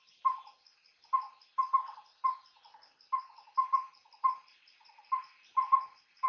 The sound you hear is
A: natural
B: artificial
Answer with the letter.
A